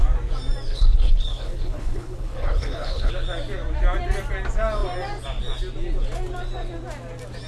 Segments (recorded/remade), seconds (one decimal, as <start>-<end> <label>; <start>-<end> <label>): 0.0-0.7 recorded; 0.7-3.1 remade; 3.1-7.5 recorded